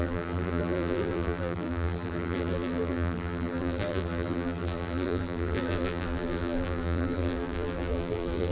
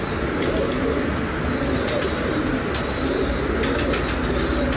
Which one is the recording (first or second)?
second